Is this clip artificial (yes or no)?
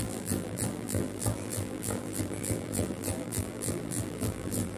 yes